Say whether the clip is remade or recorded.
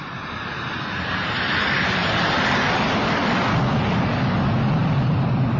recorded